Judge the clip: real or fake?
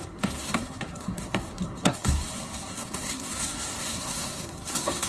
fake